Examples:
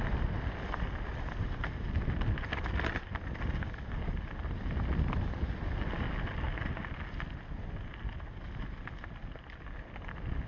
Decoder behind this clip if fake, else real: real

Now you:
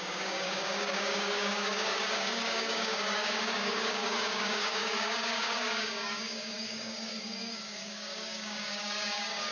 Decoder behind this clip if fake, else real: fake, codec, DAC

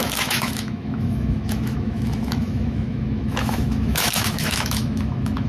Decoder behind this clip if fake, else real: fake, autoencoder, DAC-VAE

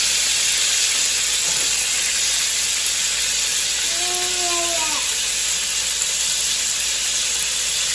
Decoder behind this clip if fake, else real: real